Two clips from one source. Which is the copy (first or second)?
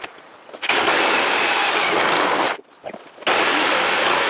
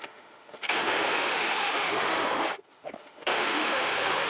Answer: second